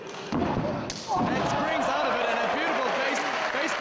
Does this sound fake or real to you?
real